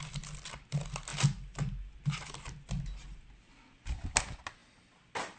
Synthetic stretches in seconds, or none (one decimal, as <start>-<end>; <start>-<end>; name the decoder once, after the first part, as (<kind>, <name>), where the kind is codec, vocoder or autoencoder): none